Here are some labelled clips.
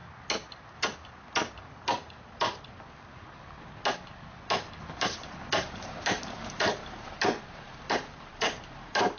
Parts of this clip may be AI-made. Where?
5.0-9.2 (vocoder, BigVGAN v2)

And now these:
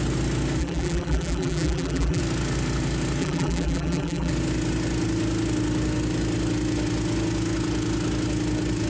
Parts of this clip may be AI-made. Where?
0.6-2.2 (vocoder, BigVGAN v2); 3.2-4.3

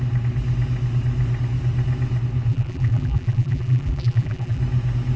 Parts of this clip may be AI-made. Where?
2.5-4.6 (vocoder, BigVGAN v2)

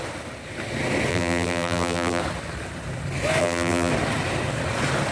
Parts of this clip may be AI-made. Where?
1.1-2.2 (vocoder, BigVGAN v2); 3.4-3.9

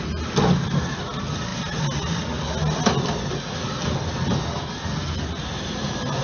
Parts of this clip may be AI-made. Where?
none

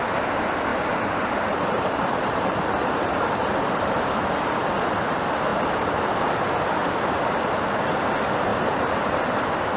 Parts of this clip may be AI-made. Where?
0.7-4.0 (vocoder, BigVGAN v2); 5.5-6.0; 8.5-9.2

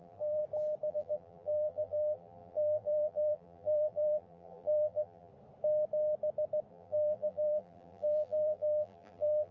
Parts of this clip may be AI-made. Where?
0.0-0.4 (vocoder, BigVGAN v2); 0.9-5.3; 6.7-9.5